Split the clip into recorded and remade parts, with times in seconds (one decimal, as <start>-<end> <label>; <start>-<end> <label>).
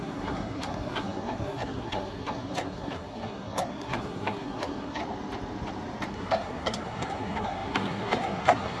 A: 0.0-5.0 remade; 5.0-6.1 recorded; 6.1-8.8 remade